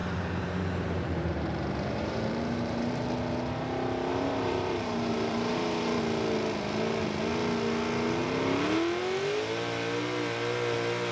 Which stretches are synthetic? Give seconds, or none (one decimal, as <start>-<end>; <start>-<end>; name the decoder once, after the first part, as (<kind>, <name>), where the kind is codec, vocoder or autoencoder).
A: 0.0-2.9 (vocoder, BigVGAN v2); 4.1-6.0